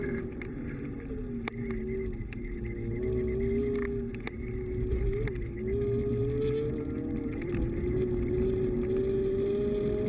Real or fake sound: real